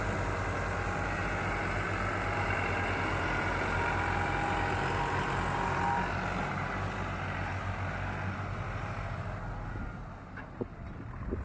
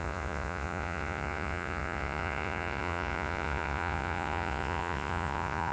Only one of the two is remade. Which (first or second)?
second